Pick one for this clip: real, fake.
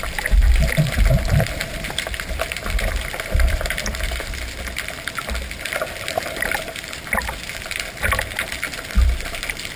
fake